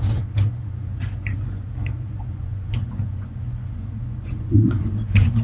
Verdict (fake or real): fake